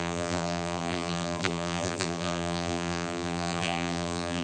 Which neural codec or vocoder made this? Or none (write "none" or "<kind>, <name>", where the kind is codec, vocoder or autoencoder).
vocoder, BigVGAN v2